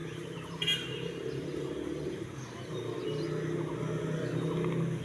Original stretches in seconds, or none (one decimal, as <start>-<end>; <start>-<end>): 3.0-5.0